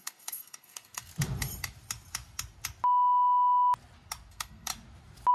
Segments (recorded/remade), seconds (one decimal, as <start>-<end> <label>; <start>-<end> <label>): 0.0-1.1 remade; 1.1-4.3 recorded; 4.3-4.7 remade; 4.7-5.3 recorded